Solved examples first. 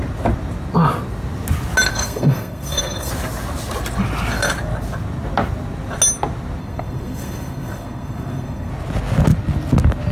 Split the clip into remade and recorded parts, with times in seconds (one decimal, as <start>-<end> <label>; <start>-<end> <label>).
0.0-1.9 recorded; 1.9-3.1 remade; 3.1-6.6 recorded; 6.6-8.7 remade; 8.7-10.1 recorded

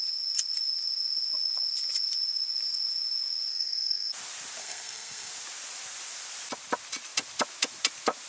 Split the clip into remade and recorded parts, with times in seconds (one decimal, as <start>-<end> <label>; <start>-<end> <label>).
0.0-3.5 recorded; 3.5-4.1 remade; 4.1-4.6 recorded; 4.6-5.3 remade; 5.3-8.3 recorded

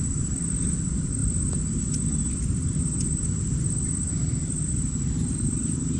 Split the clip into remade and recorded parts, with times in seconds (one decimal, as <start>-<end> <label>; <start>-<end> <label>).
0.0-6.0 recorded

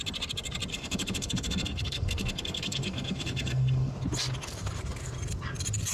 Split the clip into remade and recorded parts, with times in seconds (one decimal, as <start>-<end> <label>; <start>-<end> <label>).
0.0-0.7 recorded; 0.7-3.9 remade; 3.9-5.9 recorded

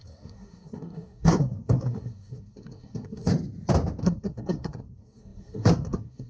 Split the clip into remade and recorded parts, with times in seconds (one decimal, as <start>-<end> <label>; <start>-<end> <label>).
0.0-3.3 remade; 3.3-4.0 recorded; 4.0-6.3 remade